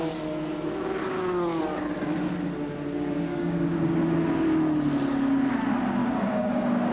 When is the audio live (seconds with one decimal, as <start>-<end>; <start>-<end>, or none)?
0.0-1.0; 1.6-3.3; 3.8-6.0